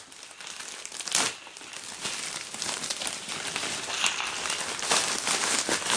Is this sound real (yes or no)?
yes